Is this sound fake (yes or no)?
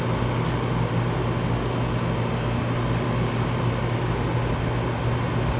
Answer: no